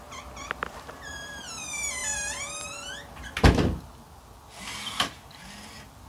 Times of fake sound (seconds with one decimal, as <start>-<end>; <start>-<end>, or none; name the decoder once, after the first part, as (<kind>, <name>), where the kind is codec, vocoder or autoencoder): 2.0-2.7 (vocoder, BigVGAN v2)